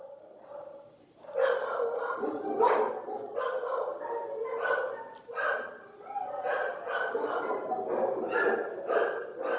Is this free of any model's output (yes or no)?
yes